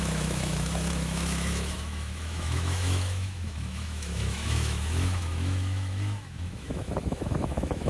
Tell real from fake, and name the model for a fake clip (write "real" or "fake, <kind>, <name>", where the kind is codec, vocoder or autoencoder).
fake, autoencoder, DAC-VAE